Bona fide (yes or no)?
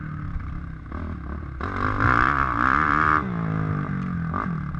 yes